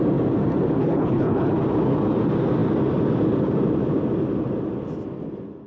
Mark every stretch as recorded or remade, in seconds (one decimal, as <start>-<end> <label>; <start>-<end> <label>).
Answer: 0.0-0.8 recorded; 0.8-1.5 remade; 1.5-5.7 recorded